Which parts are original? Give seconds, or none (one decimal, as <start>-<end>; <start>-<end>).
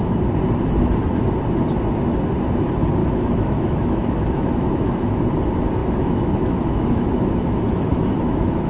0.0-3.0; 5.2-5.8